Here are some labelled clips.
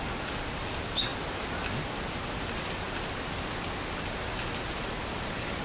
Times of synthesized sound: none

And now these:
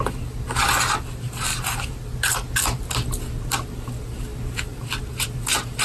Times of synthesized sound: none

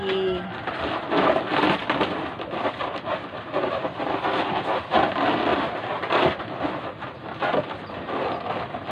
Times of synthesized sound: 1.8-5.1; 5.5-6.4